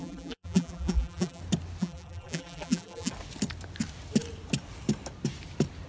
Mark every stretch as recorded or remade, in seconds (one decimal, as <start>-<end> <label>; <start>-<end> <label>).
0.0-1.4 remade; 1.4-1.8 recorded; 1.8-3.1 remade; 3.1-5.9 recorded